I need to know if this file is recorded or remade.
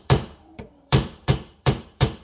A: remade